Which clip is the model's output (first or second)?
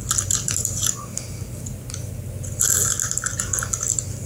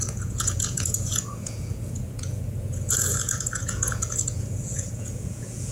second